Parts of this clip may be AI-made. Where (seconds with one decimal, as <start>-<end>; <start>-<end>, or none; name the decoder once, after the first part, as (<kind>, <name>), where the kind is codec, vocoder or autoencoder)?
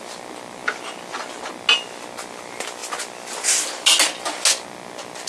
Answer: none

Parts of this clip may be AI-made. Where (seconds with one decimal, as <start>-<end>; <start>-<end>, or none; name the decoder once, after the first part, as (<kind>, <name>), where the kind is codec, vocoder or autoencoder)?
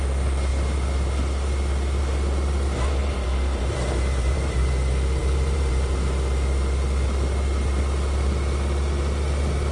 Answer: 3.0-4.7 (vocoder, BigVGAN v2); 5.2-5.9